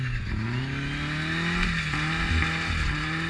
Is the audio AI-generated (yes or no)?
no